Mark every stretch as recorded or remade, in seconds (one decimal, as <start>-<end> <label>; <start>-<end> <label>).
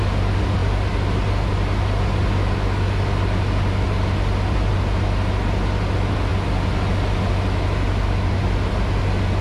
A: 0.0-9.4 recorded